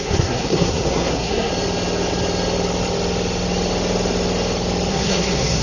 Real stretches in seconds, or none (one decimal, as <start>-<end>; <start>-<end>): 1.5-4.9